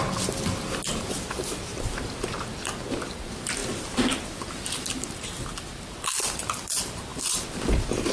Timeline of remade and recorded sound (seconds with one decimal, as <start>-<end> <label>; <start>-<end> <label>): 0.0-8.1 recorded